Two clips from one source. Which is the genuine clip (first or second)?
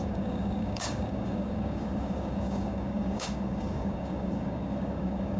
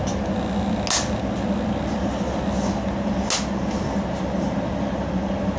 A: second